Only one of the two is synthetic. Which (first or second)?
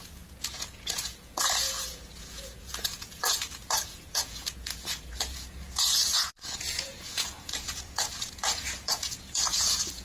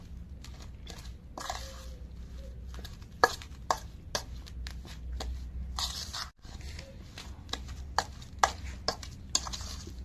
first